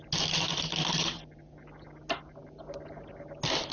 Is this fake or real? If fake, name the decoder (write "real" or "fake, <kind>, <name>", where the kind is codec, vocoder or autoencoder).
real